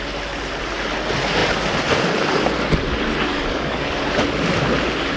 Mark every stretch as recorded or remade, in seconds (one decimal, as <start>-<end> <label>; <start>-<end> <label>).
0.0-3.3 recorded; 3.3-4.1 remade; 4.1-5.2 recorded